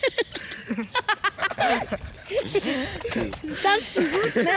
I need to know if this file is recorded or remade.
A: recorded